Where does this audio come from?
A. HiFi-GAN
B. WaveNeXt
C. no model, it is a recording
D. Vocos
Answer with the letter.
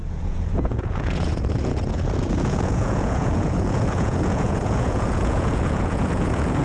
D